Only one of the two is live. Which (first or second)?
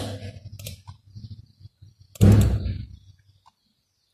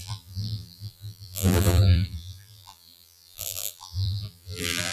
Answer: first